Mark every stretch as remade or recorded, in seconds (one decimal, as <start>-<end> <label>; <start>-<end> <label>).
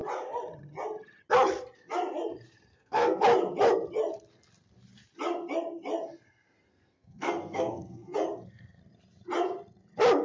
0.0-2.7 recorded; 2.7-3.2 remade; 3.2-6.7 recorded; 6.7-8.8 remade; 8.8-10.2 recorded